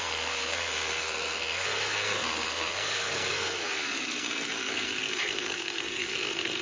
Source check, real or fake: fake